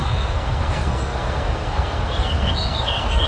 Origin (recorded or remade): remade